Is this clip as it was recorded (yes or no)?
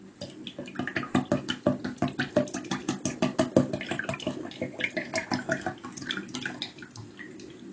yes